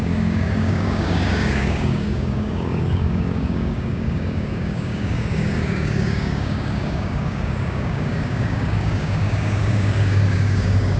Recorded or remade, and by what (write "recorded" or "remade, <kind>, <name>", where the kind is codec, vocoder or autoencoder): remade, codec, DAC